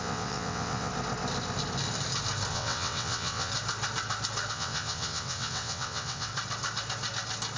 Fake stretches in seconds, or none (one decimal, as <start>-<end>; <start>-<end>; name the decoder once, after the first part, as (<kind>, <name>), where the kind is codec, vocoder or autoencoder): 0.0-0.9 (vocoder, WaveNeXt); 2.5-3.5; 4.5-6.3